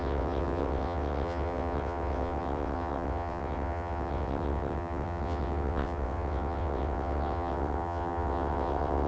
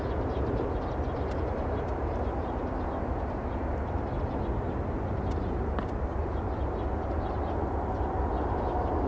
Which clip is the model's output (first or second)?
first